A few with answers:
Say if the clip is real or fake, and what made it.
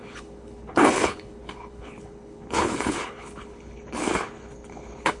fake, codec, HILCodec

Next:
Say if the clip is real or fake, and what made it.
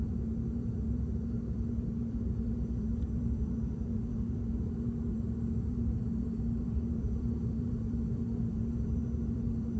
fake, vocoder, BigVGAN v2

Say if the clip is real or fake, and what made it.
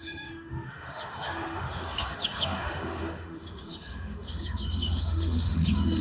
fake, autoencoder, DAC-VAE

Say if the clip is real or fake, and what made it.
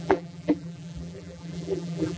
fake, vocoder, BigVGAN v2